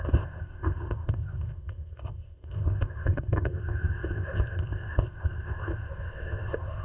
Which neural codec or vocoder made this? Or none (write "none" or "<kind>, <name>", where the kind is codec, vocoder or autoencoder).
codec, ZipCodec